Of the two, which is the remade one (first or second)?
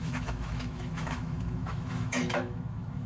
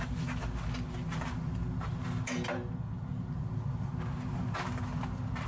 first